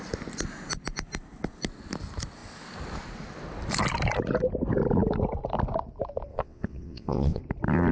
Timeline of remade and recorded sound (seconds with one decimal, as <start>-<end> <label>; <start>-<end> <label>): 0.0-6.3 recorded; 6.3-7.4 remade; 7.4-7.9 recorded